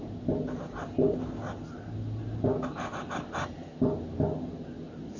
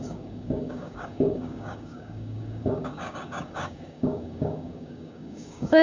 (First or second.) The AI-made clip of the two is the second